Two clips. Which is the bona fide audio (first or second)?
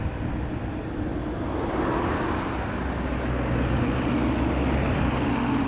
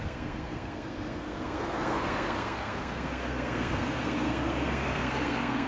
first